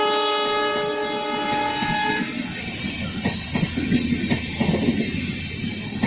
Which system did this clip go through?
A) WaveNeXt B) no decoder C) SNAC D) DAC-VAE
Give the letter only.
B